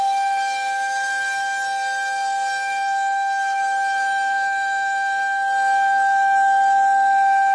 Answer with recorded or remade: recorded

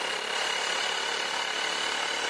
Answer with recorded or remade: recorded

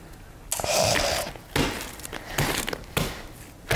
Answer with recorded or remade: recorded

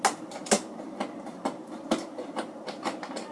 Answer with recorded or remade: recorded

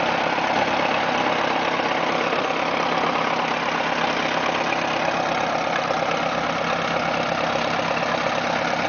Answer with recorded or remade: recorded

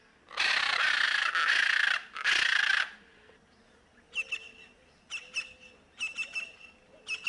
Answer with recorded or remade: recorded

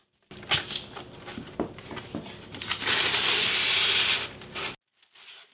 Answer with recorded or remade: recorded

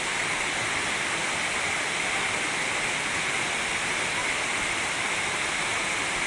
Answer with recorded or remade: recorded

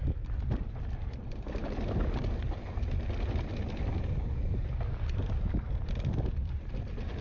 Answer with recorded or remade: recorded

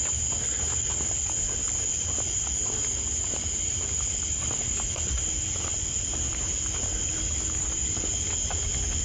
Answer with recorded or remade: recorded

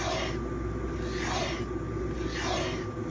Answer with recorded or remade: recorded